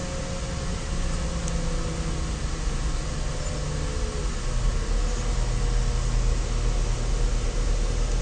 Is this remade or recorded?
recorded